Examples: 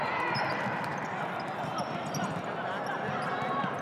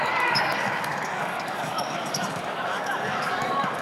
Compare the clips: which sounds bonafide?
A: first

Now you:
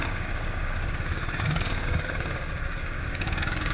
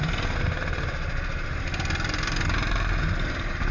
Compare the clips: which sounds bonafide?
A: second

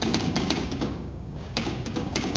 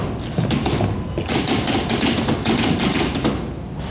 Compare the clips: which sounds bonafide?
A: second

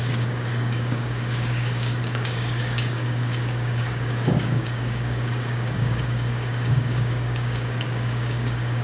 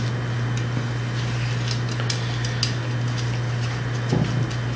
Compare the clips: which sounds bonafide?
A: second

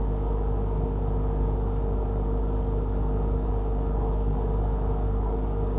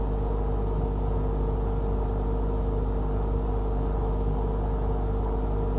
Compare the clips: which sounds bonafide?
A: second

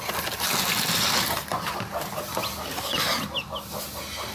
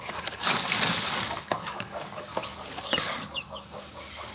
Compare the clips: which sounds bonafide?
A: first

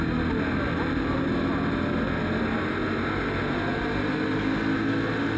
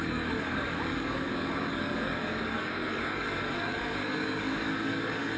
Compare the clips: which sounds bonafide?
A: first